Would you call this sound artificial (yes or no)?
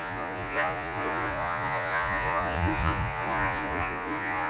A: yes